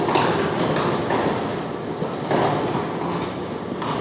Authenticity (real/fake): real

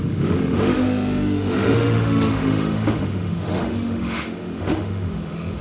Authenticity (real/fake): fake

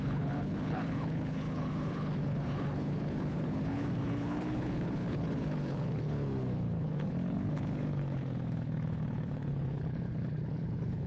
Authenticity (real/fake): fake